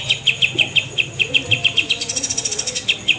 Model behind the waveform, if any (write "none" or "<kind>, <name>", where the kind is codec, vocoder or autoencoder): none